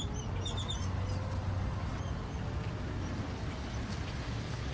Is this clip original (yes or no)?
yes